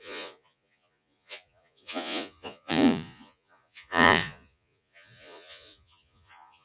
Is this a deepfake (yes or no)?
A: yes